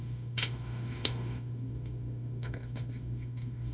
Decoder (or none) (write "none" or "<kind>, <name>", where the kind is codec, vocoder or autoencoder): autoencoder, DAC-VAE